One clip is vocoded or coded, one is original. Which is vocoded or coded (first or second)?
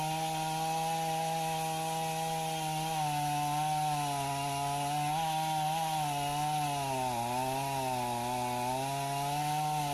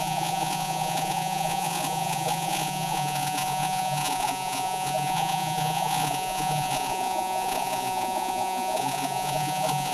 second